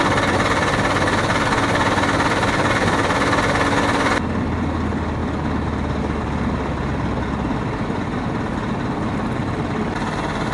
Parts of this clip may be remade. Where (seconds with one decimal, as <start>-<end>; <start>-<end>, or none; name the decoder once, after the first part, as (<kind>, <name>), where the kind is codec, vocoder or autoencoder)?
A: none